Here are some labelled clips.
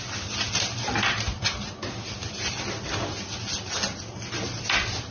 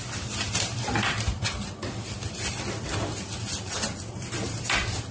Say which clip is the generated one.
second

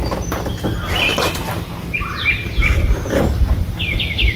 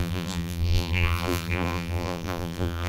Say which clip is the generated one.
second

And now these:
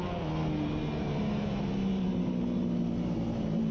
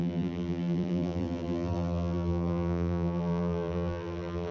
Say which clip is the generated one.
second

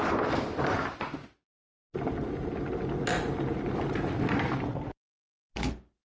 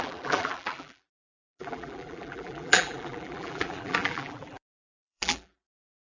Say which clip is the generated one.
second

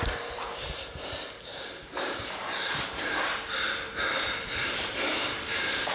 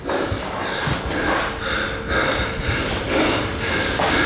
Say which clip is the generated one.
first